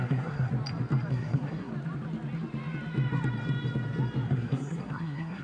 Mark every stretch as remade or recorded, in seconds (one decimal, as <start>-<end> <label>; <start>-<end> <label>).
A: 0.0-0.5 remade; 0.5-1.1 recorded; 1.1-1.7 remade; 1.7-4.3 recorded; 4.3-5.4 remade